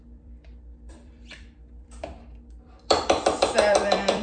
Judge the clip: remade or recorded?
remade